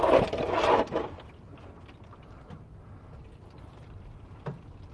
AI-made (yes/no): no